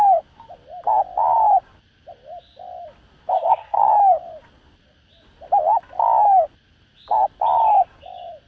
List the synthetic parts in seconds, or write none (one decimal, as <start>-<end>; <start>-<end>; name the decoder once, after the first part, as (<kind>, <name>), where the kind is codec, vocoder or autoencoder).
3.3-3.9 (codec, SNAC)